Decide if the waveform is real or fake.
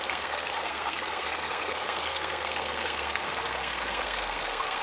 fake